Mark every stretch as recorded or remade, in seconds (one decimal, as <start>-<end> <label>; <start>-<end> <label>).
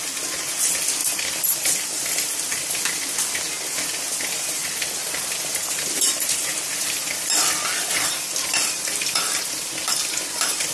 0.0-1.0 recorded; 1.0-2.8 remade; 2.8-4.6 recorded; 4.6-9.7 remade; 9.7-10.7 recorded